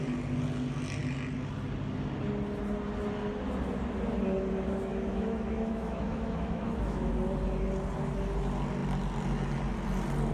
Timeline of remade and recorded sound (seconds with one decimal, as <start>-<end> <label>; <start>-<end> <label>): 0.0-4.9 recorded; 4.9-7.1 remade; 7.1-10.3 recorded